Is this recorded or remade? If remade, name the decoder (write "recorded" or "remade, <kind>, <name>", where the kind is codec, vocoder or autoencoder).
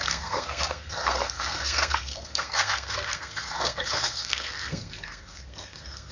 remade, codec, SNAC